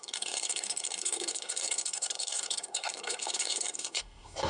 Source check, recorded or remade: remade